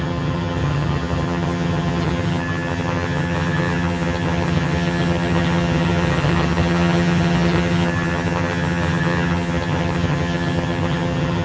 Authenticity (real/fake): fake